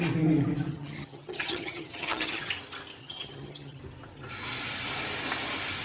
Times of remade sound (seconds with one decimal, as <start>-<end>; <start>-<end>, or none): 0.7-2.5; 3.0-3.8